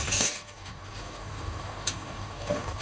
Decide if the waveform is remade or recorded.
remade